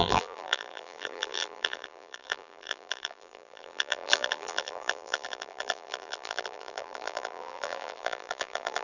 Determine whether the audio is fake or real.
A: fake